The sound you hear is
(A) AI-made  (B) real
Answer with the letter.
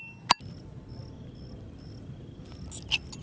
B